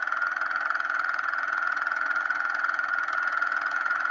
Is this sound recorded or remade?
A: remade